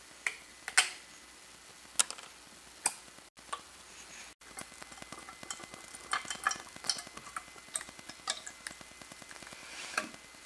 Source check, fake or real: real